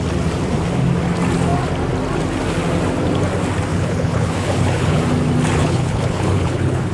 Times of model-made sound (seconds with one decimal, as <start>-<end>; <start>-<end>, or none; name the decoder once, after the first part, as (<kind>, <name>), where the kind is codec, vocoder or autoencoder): 3.7-5.0 (codec, HILCodec); 5.6-6.9